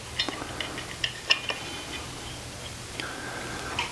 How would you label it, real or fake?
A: real